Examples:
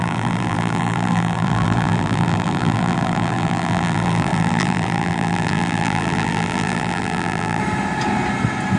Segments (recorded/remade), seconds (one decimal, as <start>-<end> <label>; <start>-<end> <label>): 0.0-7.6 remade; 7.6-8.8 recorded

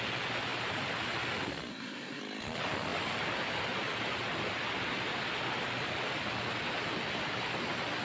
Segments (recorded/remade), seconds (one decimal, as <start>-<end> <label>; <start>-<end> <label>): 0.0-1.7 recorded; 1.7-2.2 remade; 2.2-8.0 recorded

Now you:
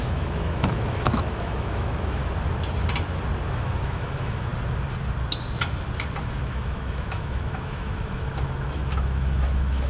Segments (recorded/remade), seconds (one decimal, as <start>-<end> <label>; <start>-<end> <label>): 0.0-2.2 remade; 2.2-3.5 recorded; 3.5-4.5 remade; 4.5-6.4 recorded; 6.4-9.9 remade

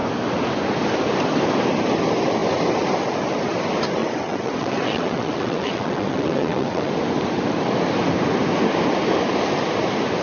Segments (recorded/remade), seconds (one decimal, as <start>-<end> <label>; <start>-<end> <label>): 0.0-4.0 recorded; 4.0-6.9 remade; 6.9-10.2 recorded

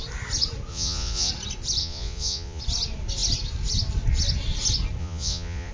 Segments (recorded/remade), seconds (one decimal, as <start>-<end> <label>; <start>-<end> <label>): 0.0-0.7 recorded; 0.7-1.3 remade; 1.3-1.8 recorded; 1.8-2.6 remade; 2.6-5.0 recorded; 5.0-5.7 remade

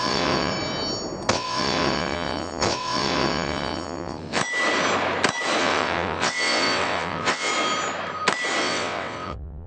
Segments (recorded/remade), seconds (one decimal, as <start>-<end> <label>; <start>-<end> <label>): 0.0-0.5 remade; 0.5-1.3 recorded; 1.3-4.4 remade; 4.4-5.6 recorded; 5.6-7.5 remade; 7.5-8.6 recorded; 8.6-9.7 remade